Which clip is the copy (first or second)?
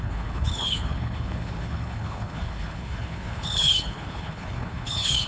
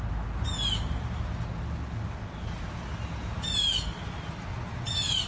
first